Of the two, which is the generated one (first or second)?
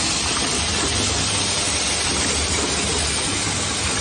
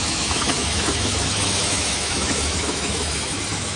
second